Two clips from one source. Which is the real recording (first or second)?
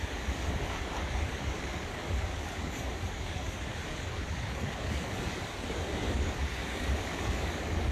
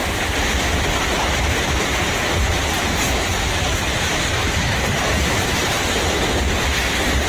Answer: second